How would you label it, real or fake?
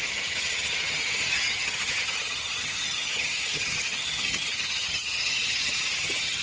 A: fake